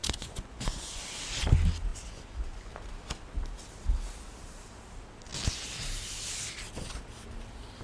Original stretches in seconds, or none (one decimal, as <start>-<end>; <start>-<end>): 1.0-1.9; 2.7-7.8